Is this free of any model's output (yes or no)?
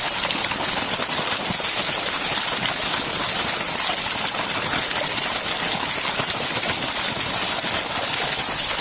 yes